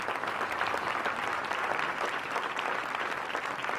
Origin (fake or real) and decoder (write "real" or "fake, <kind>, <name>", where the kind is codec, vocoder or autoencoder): real